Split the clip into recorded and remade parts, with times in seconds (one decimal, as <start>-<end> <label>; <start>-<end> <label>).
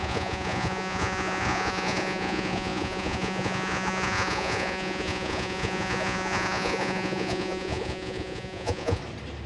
0.0-9.0 remade; 9.0-9.5 recorded